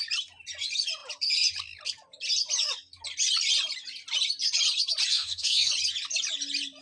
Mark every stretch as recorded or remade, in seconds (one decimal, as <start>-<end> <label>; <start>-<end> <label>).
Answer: 0.0-5.1 recorded; 5.1-5.7 remade; 5.7-6.8 recorded